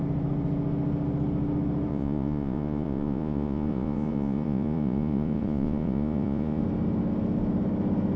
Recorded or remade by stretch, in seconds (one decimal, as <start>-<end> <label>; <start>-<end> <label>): 0.0-1.9 recorded; 1.9-6.6 remade; 6.6-8.2 recorded